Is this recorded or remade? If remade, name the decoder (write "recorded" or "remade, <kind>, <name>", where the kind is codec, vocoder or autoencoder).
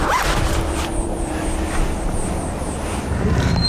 recorded